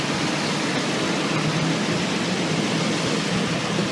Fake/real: real